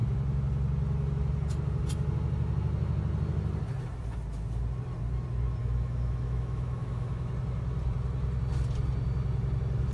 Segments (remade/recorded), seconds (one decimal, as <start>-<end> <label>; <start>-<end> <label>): 0.0-5.6 recorded; 5.6-7.3 remade; 7.3-9.9 recorded